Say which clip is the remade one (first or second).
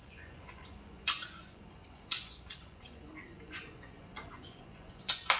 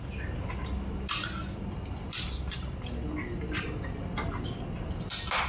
first